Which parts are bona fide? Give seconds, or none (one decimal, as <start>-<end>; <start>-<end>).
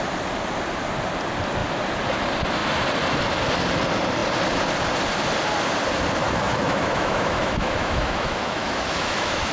0.0-6.2